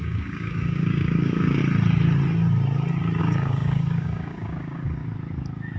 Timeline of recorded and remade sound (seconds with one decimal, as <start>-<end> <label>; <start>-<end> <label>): 0.0-1.6 remade; 1.6-3.2 recorded; 3.2-5.0 remade; 5.0-5.8 recorded